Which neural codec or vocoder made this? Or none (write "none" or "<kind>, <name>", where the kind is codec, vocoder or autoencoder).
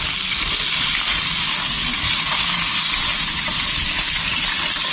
none